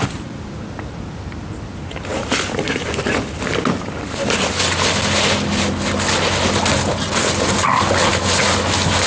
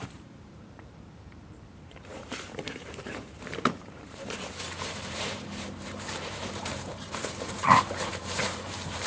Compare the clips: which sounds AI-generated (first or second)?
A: second